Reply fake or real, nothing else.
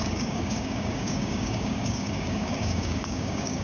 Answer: fake